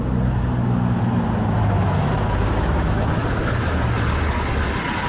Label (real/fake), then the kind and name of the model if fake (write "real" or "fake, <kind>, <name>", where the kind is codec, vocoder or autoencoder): real